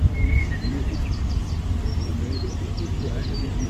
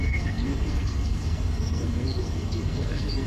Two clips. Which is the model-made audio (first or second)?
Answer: second